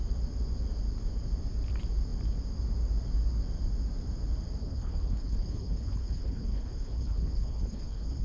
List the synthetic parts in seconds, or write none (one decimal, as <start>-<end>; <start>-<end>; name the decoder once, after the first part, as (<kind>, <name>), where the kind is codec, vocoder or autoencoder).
4.6-8.2 (codec, HILCodec)